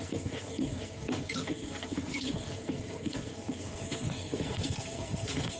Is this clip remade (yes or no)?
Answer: yes